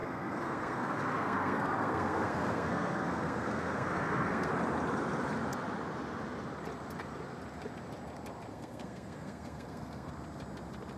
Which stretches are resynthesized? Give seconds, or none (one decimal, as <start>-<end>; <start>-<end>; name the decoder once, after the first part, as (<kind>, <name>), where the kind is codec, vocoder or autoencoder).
0.0-4.5 (codec, SNAC); 8.5-10.1